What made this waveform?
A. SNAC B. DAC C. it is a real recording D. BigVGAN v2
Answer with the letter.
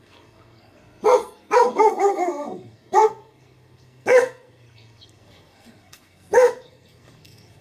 A